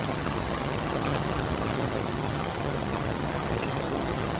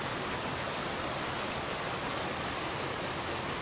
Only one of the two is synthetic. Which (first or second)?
first